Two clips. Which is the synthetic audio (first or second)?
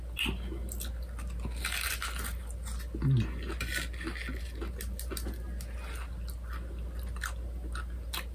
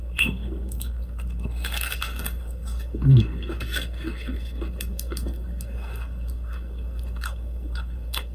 second